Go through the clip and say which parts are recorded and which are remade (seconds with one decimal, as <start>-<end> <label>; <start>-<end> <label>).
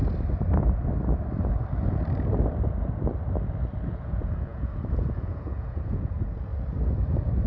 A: 0.0-3.9 recorded; 3.9-6.5 remade; 6.5-7.5 recorded